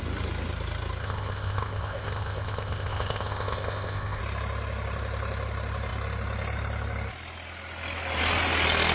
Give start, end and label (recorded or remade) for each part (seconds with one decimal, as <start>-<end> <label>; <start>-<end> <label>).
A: 0.0-1.0 recorded; 1.0-4.2 remade; 4.2-8.9 recorded